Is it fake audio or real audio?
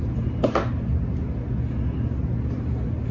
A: real